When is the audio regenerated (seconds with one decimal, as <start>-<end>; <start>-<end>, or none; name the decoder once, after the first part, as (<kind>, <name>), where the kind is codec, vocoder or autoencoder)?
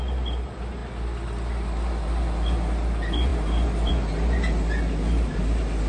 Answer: none